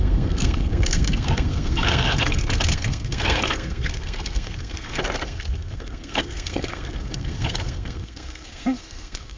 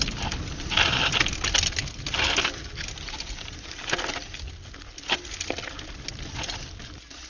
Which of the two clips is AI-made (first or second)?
first